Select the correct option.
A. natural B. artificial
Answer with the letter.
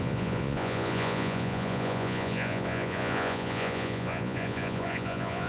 B